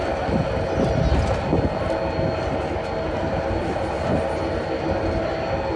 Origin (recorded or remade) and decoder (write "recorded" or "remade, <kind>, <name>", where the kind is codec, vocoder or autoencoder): recorded